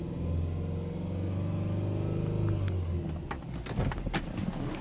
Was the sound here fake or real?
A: real